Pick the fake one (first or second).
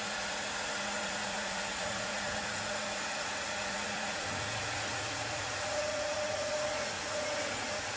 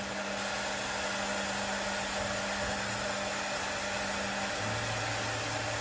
first